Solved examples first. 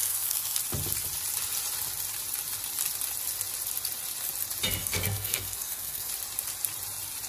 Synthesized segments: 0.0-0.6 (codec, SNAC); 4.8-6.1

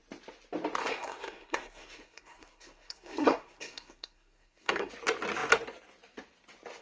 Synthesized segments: 0.8-4.9 (codec, SNAC)

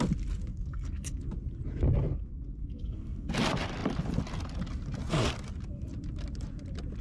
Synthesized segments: 0.5-1.2 (codec, SNAC); 2.6-3.3

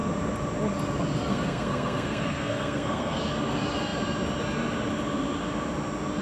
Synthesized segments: 1.3-3.2 (codec, SNAC)